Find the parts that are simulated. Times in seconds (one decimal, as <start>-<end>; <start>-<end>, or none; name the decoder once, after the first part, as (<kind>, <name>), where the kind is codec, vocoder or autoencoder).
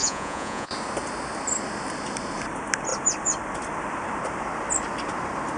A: 0.0-0.7 (vocoder, Vocos)